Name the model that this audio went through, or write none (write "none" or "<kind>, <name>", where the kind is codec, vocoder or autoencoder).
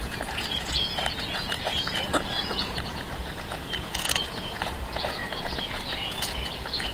vocoder, Vocos